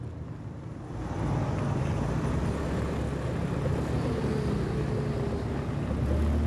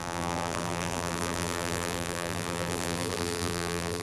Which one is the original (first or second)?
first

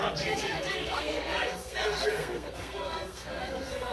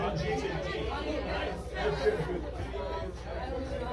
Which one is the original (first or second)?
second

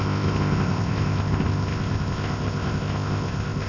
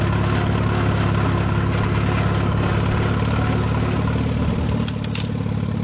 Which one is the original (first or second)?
second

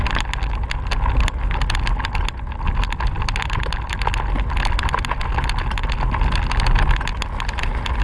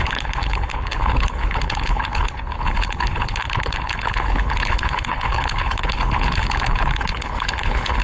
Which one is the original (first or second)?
first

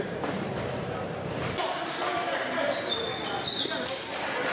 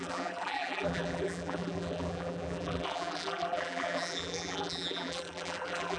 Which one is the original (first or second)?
first